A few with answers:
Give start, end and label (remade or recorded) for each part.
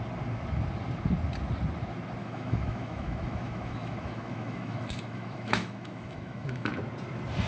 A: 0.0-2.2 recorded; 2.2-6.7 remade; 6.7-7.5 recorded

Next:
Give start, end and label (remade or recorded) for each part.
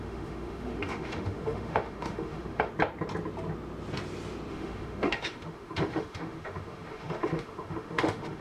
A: 0.0-2.7 remade; 2.7-4.5 recorded; 4.5-8.4 remade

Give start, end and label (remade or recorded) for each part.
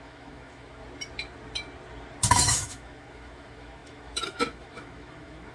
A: 0.0-0.8 remade; 0.8-2.3 recorded; 2.3-5.5 remade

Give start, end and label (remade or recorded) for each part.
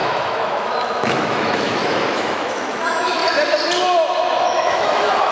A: 0.0-3.2 remade; 3.2-4.4 recorded; 4.4-5.3 remade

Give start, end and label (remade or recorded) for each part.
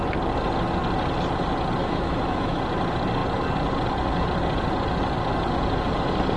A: 0.0-1.8 recorded; 1.8-2.6 remade; 2.6-6.4 recorded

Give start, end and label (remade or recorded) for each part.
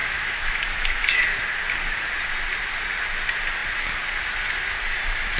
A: 0.0-1.2 remade; 1.2-5.4 recorded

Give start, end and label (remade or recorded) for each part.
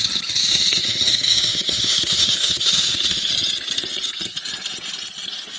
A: 0.0-0.4 recorded; 0.4-3.3 remade; 3.3-5.6 recorded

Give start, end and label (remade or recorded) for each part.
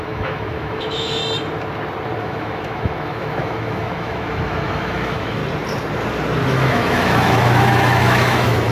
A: 0.0-1.2 remade; 1.2-2.2 recorded; 2.2-5.4 remade; 5.4-6.5 recorded; 6.5-8.7 remade